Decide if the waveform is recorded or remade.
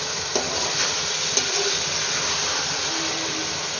recorded